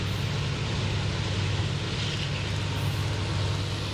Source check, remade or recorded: recorded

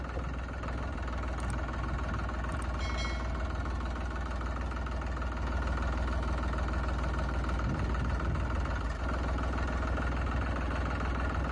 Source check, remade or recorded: recorded